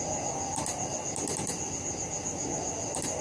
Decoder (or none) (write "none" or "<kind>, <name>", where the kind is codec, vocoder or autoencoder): none